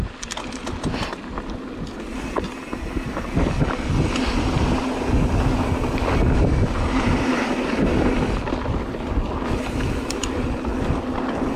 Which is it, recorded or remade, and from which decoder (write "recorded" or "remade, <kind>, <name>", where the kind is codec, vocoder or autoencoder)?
recorded